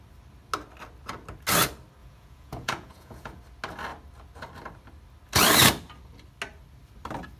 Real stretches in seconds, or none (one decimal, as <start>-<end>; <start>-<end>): 0.0-2.0; 3.4-7.4